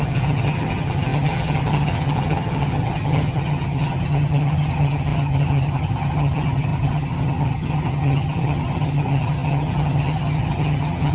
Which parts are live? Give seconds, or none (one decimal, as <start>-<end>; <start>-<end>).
none